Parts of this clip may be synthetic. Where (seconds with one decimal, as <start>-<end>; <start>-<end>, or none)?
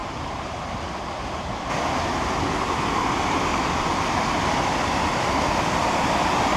3.5-4.6